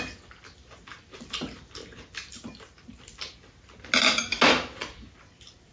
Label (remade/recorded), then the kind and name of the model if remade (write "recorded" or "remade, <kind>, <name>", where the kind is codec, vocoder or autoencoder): recorded